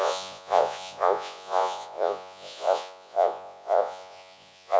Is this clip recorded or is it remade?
remade